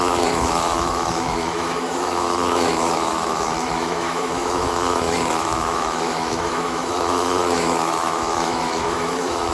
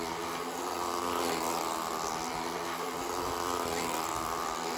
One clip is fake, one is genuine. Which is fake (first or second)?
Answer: first